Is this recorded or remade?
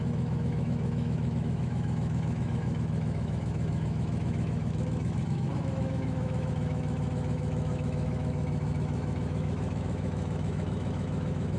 remade